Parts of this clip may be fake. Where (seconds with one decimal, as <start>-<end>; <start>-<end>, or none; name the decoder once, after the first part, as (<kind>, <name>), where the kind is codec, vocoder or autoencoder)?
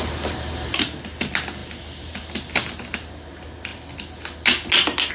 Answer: none